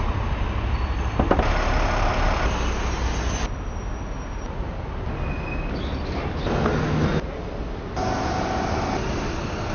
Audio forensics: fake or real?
real